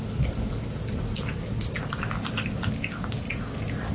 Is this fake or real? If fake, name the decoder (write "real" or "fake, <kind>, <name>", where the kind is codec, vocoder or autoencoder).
real